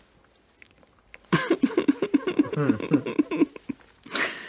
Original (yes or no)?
yes